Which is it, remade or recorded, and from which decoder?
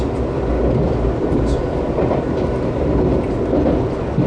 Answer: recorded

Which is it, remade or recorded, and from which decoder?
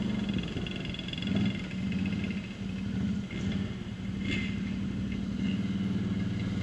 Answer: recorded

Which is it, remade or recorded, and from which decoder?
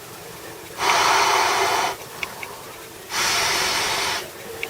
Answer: recorded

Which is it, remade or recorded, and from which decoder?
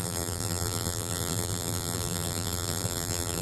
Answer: remade, vocoder, BigVGAN v2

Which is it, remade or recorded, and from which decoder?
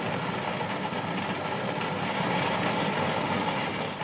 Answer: recorded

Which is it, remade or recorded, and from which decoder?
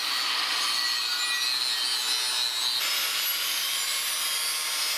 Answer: recorded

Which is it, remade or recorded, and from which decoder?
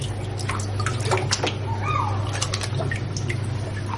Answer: recorded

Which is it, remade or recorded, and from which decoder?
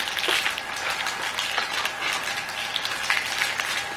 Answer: recorded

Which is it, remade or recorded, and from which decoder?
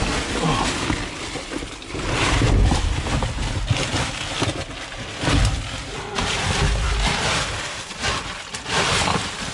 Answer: recorded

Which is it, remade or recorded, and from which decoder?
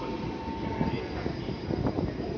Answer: recorded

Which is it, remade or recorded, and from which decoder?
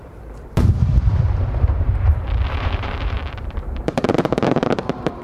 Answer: remade, vocoder, BigVGAN v2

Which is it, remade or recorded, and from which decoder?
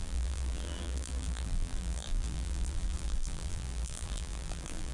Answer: remade, vocoder, BigVGAN v2